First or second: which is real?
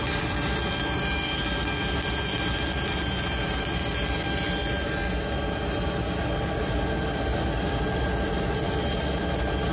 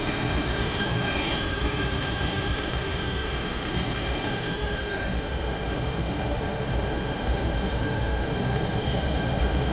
first